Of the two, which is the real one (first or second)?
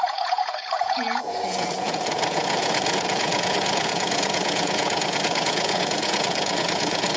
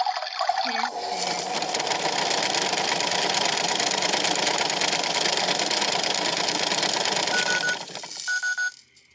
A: second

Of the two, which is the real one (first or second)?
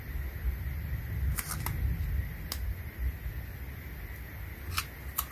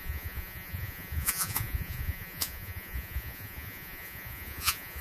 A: first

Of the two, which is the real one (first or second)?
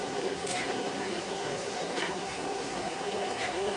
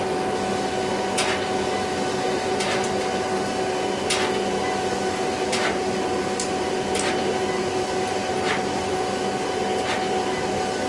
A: second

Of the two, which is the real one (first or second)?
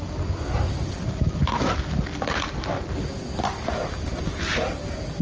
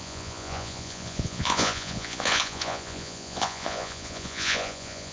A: first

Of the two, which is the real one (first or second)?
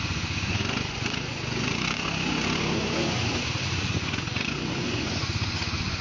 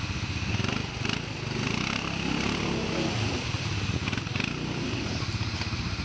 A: second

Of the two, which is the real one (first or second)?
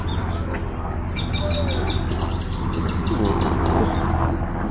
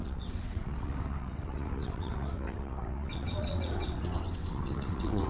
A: first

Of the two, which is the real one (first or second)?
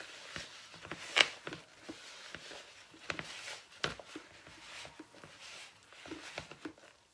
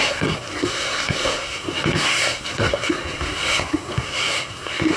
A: first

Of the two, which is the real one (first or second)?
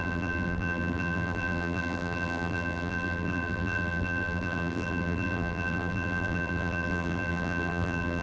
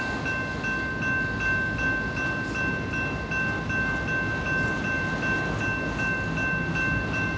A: second